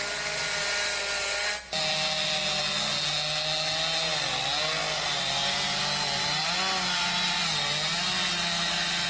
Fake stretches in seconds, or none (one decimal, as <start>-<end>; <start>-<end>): none